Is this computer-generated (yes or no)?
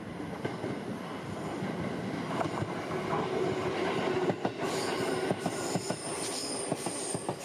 no